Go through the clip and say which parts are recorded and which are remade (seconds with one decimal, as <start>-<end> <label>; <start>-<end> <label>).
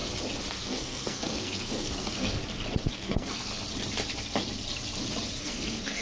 0.0-0.5 recorded; 0.5-2.4 remade; 2.4-2.9 recorded; 2.9-3.5 remade; 3.5-5.4 recorded; 5.4-6.0 remade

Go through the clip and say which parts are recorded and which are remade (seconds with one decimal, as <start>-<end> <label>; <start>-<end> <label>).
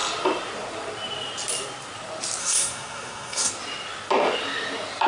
0.0-2.4 recorded; 2.4-3.5 remade; 3.5-5.1 recorded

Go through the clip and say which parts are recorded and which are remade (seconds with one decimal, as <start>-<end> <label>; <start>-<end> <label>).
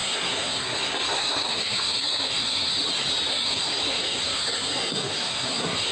0.0-2.7 remade; 2.7-3.3 recorded; 3.3-5.9 remade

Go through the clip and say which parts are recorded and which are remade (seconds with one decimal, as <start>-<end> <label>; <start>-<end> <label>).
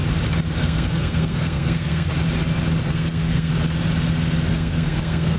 0.0-0.6 recorded; 0.6-2.1 remade; 2.1-2.8 recorded; 2.8-3.5 remade; 3.5-4.5 recorded; 4.5-5.4 remade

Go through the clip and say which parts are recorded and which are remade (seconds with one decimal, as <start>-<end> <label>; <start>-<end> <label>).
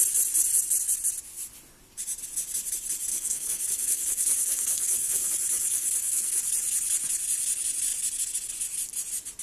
0.0-3.1 recorded; 3.1-5.3 remade; 5.3-5.7 recorded; 5.7-6.4 remade; 6.4-9.4 recorded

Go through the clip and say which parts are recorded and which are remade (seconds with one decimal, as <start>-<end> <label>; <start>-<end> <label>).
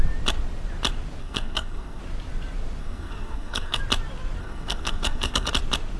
0.0-1.2 recorded; 1.2-2.0 remade; 2.0-2.8 recorded; 2.8-3.8 remade; 3.8-4.4 recorded; 4.4-5.5 remade; 5.5-6.0 recorded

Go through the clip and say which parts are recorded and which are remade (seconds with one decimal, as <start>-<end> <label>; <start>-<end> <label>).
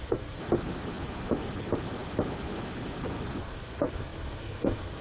0.0-0.4 remade; 0.4-3.4 recorded; 3.4-5.0 remade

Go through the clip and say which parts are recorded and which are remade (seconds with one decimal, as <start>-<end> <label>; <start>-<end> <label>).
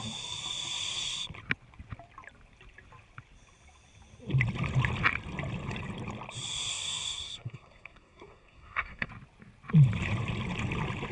0.0-6.7 recorded; 6.7-9.1 remade; 9.1-11.1 recorded